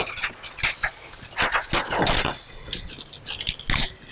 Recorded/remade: recorded